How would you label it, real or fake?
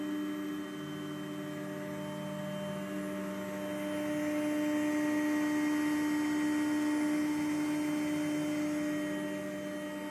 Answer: real